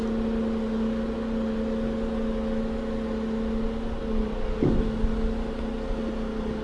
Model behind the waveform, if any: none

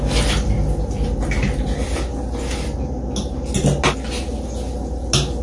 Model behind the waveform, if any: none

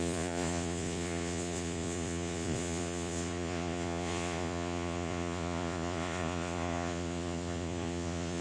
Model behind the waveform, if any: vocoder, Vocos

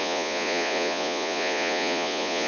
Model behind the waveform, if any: vocoder, Vocos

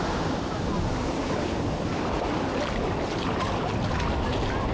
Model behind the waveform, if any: none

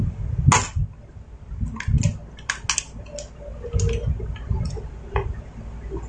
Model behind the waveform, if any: none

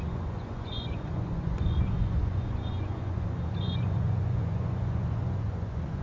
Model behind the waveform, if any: vocoder, Vocos